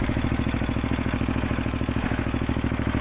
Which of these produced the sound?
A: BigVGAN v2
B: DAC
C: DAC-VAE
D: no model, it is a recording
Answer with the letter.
C